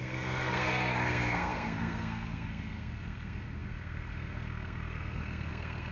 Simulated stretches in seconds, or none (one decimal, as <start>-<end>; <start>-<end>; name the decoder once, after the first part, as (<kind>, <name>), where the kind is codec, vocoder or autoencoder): 0.0-5.9 (codec, SNAC)